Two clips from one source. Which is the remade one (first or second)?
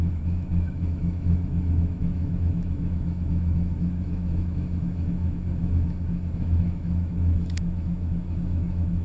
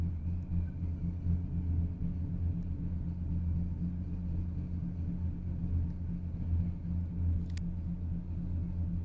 first